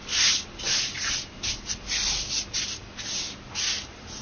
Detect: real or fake real